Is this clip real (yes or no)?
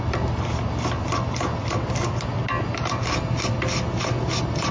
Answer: yes